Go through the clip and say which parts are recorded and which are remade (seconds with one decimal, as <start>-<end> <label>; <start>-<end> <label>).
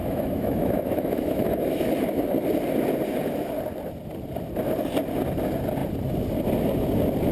0.0-1.9 remade; 1.9-7.3 recorded